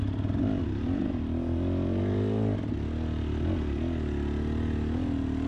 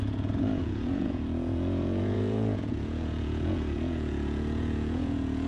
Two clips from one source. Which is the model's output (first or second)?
second